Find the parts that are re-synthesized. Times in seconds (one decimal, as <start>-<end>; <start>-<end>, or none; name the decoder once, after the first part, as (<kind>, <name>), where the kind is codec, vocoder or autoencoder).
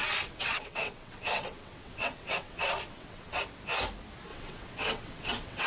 0.0-3.4 (vocoder, WaveNeXt); 4.3-5.7